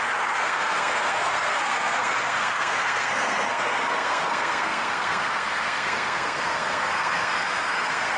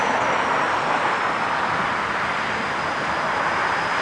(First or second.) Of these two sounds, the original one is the second